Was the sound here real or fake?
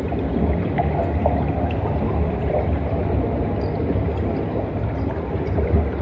real